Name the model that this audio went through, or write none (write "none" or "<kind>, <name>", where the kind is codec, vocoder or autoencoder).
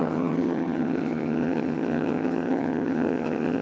vocoder, HiFi-GAN